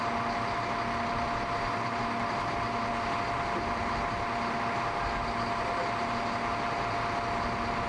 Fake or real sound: real